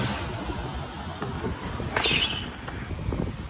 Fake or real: real